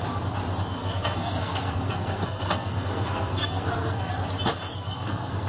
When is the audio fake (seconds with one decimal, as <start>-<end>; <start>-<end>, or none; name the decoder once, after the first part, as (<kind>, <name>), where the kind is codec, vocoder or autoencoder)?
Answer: 0.8-4.1 (codec, SNAC); 4.7-5.5